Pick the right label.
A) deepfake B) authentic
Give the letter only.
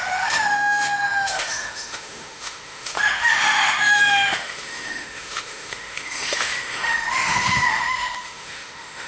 A